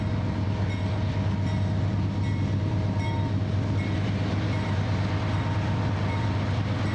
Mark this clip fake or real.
real